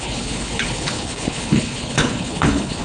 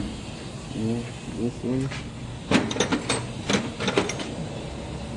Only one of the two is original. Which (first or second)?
second